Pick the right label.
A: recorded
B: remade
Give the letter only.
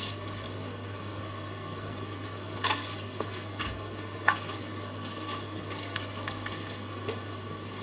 B